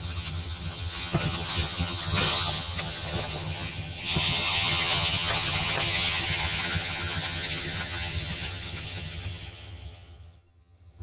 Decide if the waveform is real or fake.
fake